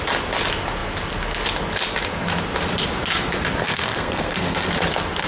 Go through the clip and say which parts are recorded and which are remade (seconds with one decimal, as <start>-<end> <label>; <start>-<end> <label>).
0.0-3.6 recorded; 3.6-4.7 remade; 4.7-5.3 recorded